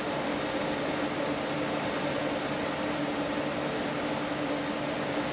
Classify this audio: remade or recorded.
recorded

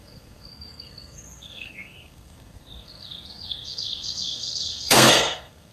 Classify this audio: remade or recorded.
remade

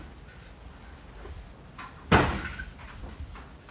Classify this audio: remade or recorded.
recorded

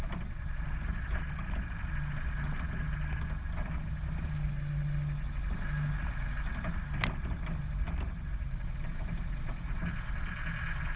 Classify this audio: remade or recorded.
recorded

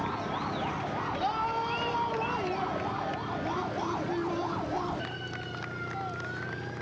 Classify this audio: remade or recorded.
recorded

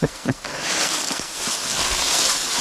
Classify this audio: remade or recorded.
remade